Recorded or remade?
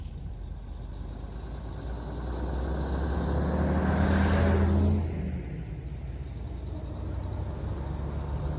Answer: recorded